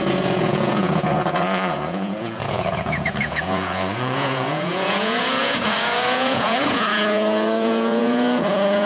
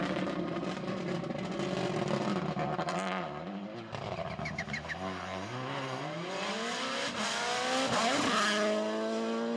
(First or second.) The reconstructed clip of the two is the first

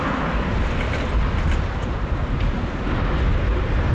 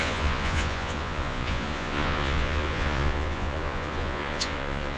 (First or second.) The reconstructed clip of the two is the second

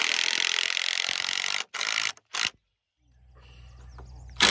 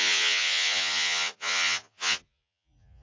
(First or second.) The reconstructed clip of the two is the second